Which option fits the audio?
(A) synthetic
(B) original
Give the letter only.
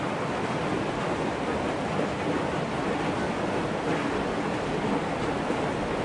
B